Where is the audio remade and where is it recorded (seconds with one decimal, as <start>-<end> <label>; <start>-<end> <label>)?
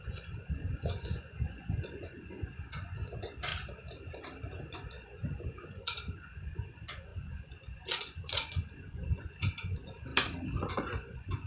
0.0-3.5 remade; 3.5-4.6 recorded; 4.6-10.1 remade; 10.1-10.7 recorded; 10.7-11.5 remade